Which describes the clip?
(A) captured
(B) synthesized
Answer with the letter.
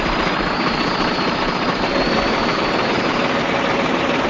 B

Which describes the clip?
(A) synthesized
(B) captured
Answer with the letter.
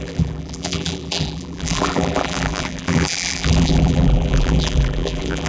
A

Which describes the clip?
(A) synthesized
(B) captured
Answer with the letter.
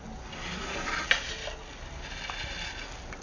B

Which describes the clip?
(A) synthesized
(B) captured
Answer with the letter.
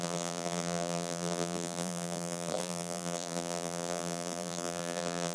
A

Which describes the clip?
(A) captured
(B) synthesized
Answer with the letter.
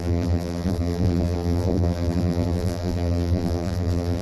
B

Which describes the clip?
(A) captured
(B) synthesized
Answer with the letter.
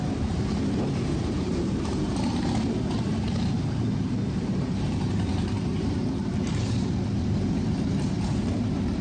B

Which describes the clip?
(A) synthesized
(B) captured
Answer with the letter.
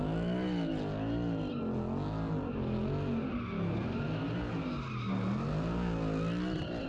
B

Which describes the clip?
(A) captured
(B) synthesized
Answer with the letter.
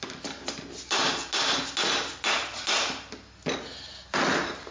A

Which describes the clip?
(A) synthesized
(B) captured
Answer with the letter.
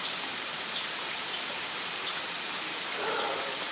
A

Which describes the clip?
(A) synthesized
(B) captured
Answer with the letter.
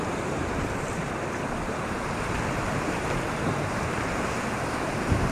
A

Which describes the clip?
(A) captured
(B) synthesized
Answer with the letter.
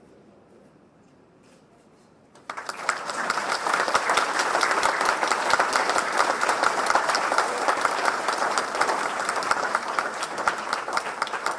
B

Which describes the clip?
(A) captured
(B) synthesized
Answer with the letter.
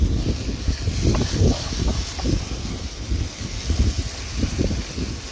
A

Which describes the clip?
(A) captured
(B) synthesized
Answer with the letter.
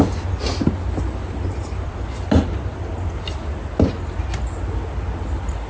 A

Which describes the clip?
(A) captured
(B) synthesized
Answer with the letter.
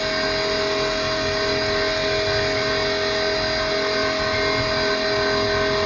A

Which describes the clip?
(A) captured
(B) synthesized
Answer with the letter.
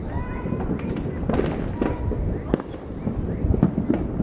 A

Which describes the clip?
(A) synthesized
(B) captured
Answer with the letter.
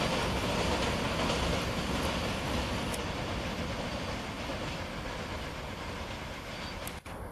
B